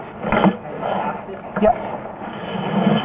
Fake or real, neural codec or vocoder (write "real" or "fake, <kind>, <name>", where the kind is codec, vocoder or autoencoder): real